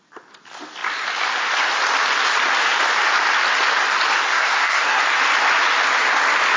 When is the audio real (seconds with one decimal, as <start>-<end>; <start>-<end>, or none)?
0.0-4.2; 5.0-6.6